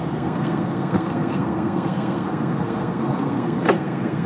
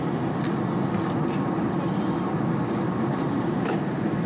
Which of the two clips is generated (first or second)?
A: first